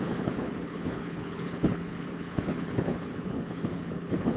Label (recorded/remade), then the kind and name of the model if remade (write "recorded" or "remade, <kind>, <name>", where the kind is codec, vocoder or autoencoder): remade, codec, HILCodec